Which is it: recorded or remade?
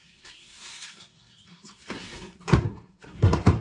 remade